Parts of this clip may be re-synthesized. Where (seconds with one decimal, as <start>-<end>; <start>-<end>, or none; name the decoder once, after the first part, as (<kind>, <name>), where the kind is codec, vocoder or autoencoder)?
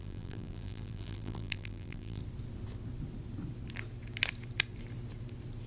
0.0-2.2 (vocoder, BigVGAN v2)